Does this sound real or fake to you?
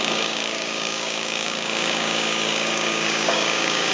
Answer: fake